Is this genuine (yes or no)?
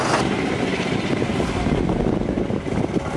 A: yes